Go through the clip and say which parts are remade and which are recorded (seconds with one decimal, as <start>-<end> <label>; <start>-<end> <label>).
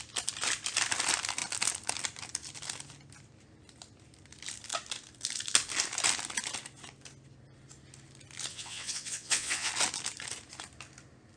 0.0-8.5 recorded; 8.5-9.7 remade; 9.7-11.4 recorded